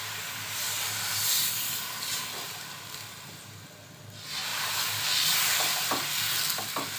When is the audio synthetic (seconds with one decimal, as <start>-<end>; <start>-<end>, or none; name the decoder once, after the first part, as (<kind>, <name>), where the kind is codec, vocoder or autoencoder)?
4.5-5.6 (vocoder, BigVGAN v2)